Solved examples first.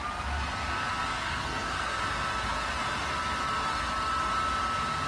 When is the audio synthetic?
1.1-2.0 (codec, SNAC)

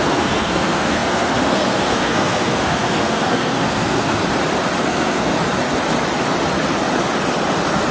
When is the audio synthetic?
0.0-4.2 (codec, SNAC); 4.8-5.3

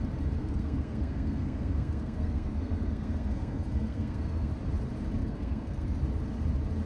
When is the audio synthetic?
0.4-4.5 (codec, SNAC); 5.2-6.0

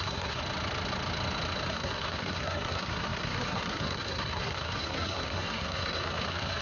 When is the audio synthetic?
0.0-0.4 (codec, SNAC); 1.7-6.6

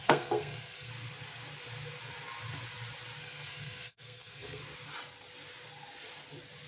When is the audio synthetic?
0.0-0.9 (codec, SNAC); 3.2-4.6

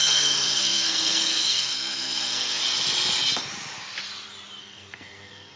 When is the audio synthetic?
0.0-2.6 (codec, SNAC); 4.6-5.6

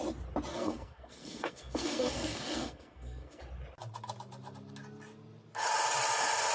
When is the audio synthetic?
0.5-3.4 (codec, SNAC)